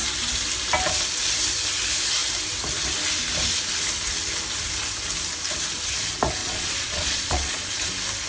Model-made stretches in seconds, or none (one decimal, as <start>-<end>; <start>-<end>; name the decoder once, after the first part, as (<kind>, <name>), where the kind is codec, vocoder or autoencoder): 6.4-7.9 (vocoder, Vocos)